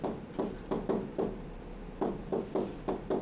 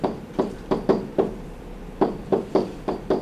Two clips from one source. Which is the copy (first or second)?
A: second